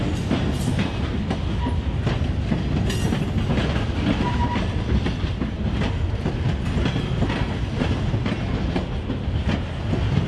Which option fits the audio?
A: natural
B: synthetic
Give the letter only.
A